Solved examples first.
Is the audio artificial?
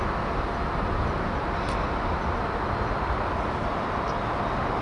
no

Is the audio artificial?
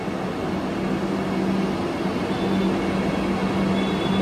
no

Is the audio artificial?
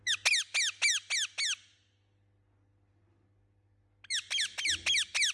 no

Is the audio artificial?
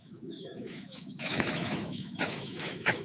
yes